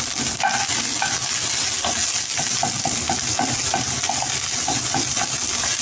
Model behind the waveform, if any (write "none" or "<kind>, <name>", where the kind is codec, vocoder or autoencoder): none